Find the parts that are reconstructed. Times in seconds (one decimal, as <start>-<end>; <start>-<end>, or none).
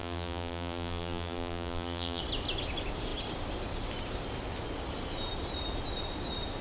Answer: 0.0-2.2